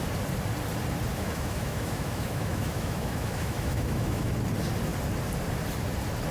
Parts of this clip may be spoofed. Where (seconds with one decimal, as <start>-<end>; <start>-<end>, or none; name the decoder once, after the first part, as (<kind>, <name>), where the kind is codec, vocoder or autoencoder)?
1.1-4.3 (autoencoder, DAC-VAE)